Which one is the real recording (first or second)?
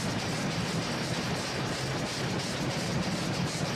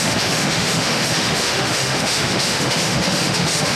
first